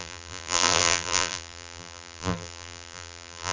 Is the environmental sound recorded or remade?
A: remade